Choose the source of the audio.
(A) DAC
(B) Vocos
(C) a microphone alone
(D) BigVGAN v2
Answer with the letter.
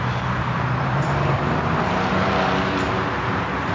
D